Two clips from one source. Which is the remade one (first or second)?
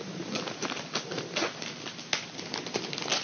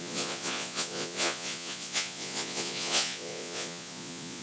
second